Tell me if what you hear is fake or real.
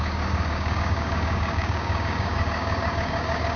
fake